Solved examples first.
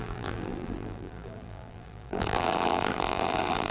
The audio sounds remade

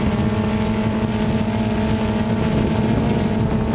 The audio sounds recorded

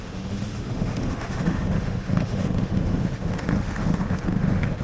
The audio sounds remade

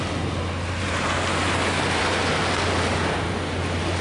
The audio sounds recorded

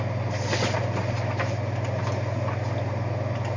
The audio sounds recorded